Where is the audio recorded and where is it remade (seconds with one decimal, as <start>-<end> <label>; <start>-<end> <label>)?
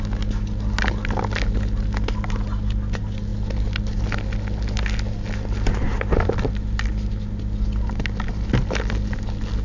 0.0-9.6 recorded